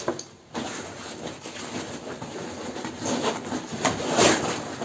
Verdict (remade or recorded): recorded